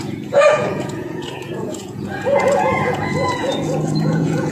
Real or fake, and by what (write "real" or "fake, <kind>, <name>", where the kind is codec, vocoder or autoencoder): fake, vocoder, Vocos